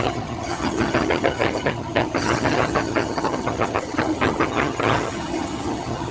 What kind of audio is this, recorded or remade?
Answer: remade